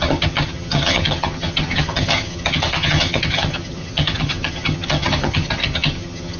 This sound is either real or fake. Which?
fake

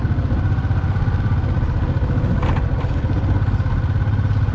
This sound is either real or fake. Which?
real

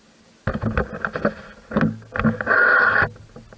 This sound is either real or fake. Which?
real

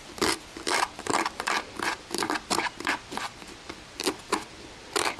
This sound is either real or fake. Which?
fake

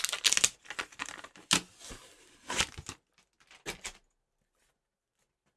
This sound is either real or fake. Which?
real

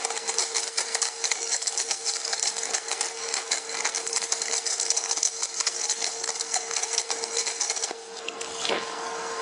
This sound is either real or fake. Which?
fake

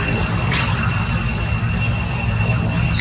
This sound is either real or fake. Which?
real